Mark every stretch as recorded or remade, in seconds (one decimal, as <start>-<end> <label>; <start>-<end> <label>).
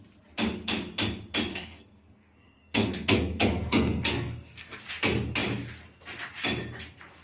0.0-1.5 recorded; 1.5-4.8 remade; 4.8-7.2 recorded